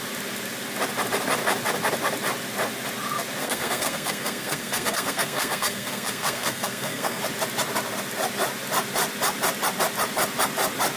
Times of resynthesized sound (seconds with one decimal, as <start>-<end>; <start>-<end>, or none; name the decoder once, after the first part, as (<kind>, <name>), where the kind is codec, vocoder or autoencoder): 3.4-7.2 (codec, SNAC)

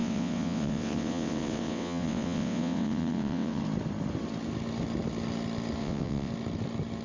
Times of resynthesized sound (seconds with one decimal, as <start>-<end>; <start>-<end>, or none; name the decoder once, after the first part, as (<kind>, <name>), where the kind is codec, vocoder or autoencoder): 0.0-3.6 (vocoder, WaveNeXt); 5.8-6.3

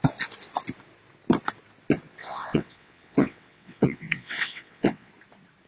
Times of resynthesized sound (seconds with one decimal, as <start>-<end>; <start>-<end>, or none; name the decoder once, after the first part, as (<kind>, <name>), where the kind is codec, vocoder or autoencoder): 2.2-5.1 (vocoder, WaveNeXt)

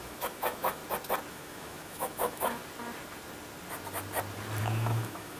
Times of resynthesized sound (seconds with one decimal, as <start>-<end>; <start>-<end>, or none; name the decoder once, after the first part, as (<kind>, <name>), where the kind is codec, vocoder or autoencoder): 0.0-0.8 (autoencoder, DAC-VAE); 1.3-2.6; 4.6-5.4